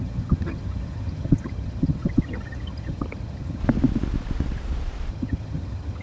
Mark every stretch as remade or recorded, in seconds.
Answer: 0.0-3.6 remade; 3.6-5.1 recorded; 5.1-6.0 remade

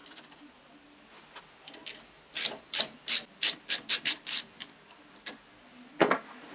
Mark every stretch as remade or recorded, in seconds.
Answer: 0.0-6.5 recorded

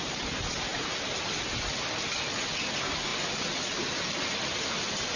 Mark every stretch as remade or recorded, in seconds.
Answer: 0.0-5.2 recorded

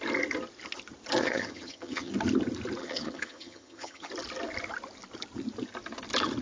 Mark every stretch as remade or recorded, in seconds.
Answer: 0.0-1.2 recorded; 1.2-2.1 remade; 2.1-2.8 recorded; 2.8-4.1 remade; 4.1-6.4 recorded